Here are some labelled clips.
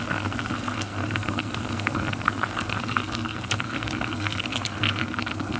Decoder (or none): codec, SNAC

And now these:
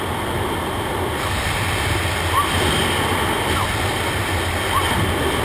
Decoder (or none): none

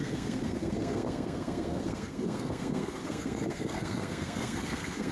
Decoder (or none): codec, SNAC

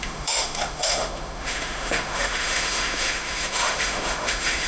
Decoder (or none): autoencoder, DAC-VAE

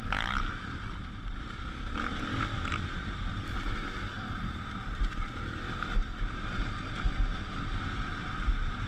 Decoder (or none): vocoder, BigVGAN v2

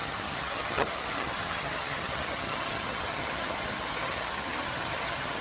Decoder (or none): vocoder, HiFi-GAN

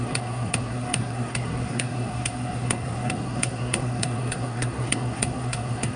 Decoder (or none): codec, SNAC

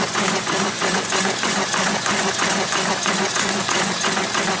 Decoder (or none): vocoder, Vocos